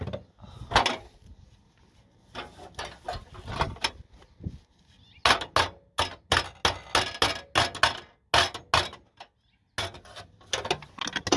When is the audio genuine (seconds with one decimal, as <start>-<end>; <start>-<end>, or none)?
0.0-11.4